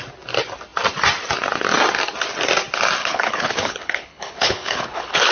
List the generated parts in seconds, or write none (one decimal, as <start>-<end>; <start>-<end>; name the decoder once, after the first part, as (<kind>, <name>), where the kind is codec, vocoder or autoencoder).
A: 3.0-5.3 (codec, HILCodec)